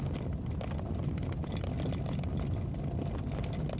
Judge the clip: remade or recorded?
recorded